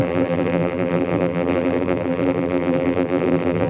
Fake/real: fake